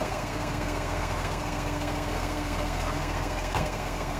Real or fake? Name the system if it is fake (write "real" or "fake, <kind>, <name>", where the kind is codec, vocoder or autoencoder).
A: fake, codec, SNAC